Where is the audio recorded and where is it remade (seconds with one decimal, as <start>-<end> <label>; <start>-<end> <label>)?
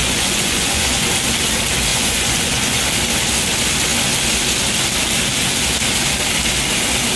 0.0-1.1 remade; 1.1-1.9 recorded; 1.9-2.8 remade; 2.8-7.2 recorded